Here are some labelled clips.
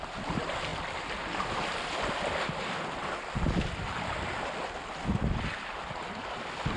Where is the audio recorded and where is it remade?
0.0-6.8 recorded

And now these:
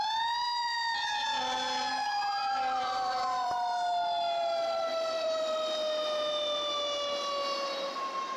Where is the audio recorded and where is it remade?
0.0-2.4 recorded; 2.4-3.5 remade; 3.5-4.9 recorded; 4.9-5.5 remade; 5.5-8.4 recorded

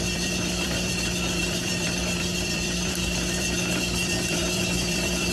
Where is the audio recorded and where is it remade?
0.0-5.3 remade

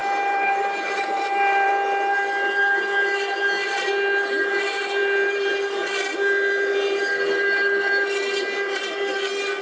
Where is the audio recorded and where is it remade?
0.0-1.7 remade; 1.7-5.0 recorded; 5.0-5.5 remade; 5.5-9.6 recorded

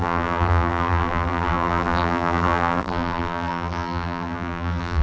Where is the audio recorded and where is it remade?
0.0-5.0 remade